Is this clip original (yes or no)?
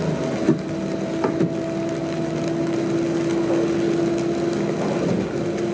yes